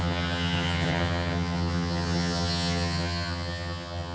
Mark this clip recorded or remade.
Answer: remade